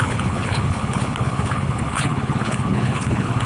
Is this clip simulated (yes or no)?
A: yes